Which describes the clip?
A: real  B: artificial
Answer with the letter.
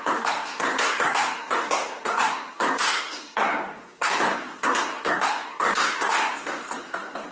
B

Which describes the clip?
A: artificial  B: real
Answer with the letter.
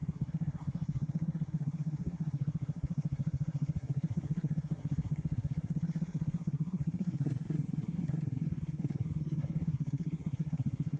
A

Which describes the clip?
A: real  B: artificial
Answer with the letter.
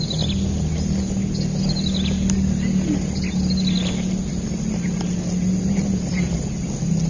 A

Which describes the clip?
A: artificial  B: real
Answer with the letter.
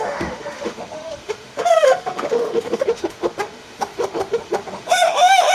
A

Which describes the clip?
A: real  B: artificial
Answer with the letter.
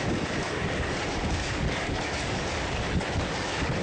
B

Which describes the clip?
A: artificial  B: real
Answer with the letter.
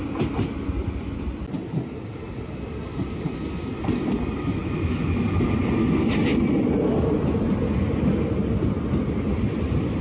B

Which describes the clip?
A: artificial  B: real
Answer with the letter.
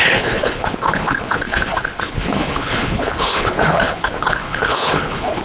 A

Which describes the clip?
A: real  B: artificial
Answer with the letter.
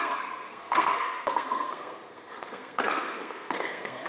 B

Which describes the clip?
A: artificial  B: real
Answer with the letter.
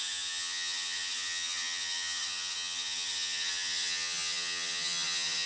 A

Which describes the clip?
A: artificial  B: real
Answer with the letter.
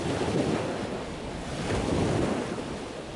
B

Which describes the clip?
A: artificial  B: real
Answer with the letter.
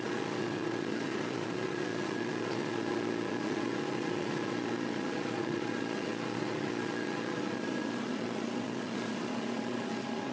A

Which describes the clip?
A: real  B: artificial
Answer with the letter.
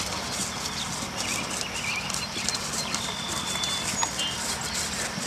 A